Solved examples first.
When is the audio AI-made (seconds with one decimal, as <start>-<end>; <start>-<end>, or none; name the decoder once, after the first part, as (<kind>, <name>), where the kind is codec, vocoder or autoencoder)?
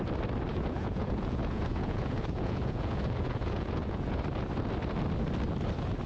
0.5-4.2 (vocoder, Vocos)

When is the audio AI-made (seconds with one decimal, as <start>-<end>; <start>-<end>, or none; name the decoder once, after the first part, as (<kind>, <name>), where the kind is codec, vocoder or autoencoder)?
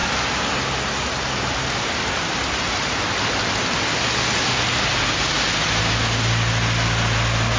none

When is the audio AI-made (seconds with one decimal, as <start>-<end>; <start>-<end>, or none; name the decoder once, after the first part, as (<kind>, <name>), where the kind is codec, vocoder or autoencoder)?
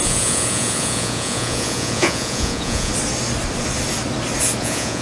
0.0-2.9 (vocoder, Vocos); 4.6-5.0